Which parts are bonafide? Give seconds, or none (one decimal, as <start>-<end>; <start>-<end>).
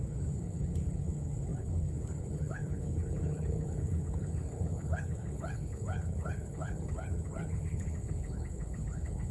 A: none